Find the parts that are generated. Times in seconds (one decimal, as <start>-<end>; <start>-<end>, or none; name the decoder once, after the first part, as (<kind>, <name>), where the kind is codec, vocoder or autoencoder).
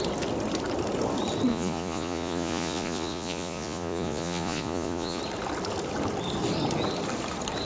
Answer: 1.5-5.2 (vocoder, Vocos)